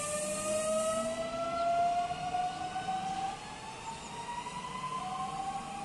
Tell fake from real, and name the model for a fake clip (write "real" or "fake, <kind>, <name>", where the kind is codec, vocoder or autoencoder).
real